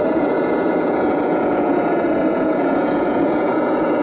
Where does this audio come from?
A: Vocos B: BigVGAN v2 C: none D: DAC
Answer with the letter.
A